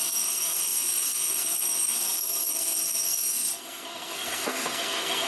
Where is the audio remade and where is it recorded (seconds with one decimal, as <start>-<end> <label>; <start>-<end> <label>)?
0.0-5.3 remade